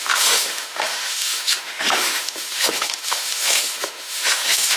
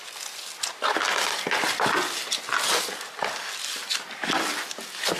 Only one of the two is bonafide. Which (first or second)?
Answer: second